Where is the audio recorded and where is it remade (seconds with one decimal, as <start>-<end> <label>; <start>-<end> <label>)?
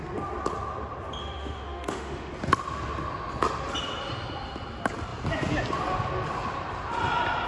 0.0-1.2 recorded; 1.2-2.3 remade; 2.3-7.5 recorded